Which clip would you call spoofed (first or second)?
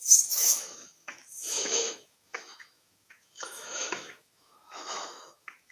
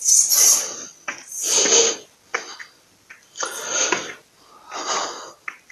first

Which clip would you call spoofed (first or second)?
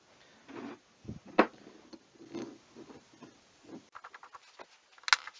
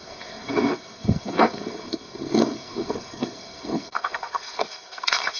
second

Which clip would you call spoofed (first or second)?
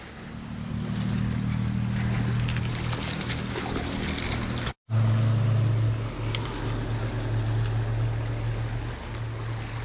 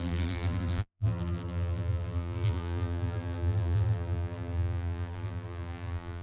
second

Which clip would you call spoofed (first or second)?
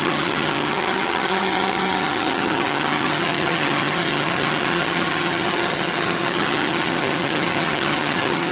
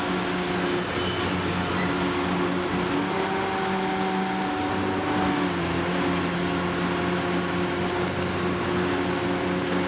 first